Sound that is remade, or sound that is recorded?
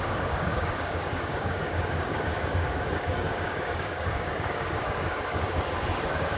remade